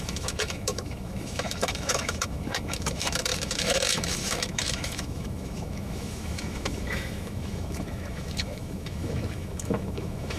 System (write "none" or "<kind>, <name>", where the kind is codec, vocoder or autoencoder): autoencoder, DAC-VAE